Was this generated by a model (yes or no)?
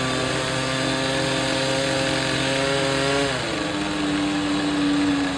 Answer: no